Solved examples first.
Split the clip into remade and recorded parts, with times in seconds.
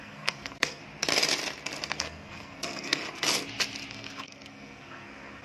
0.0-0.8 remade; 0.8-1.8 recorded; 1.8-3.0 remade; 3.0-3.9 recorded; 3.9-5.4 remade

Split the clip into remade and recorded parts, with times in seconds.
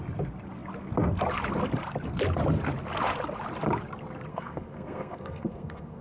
0.0-4.3 recorded; 4.3-6.0 remade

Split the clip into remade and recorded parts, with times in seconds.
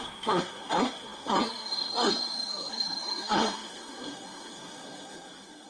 0.0-5.7 remade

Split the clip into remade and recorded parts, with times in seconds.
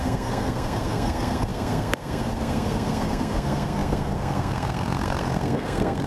0.0-6.1 remade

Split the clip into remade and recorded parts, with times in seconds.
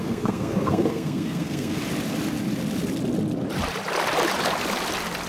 0.0-1.8 remade; 1.8-5.3 recorded